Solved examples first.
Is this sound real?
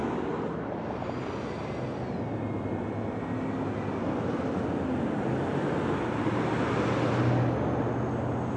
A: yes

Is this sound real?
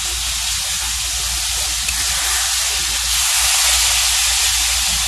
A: yes